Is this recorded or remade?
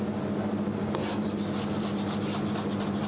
recorded